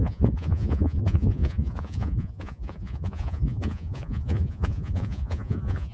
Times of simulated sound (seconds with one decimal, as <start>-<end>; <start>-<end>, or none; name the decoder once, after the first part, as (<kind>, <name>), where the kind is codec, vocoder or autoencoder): 0.0-5.9 (vocoder, Vocos)